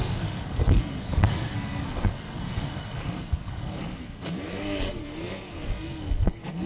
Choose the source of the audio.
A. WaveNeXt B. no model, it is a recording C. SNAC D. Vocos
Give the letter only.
C